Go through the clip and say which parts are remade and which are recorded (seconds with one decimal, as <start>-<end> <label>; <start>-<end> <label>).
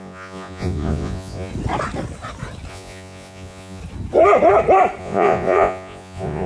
0.0-1.5 remade; 1.5-2.7 recorded; 2.7-3.8 remade; 3.8-5.0 recorded; 5.0-6.5 remade